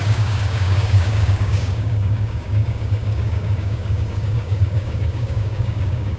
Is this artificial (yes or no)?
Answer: yes